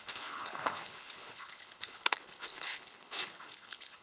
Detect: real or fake fake